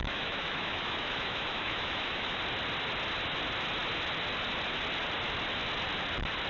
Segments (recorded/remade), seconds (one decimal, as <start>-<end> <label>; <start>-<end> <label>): 0.0-2.4 remade; 2.4-6.5 recorded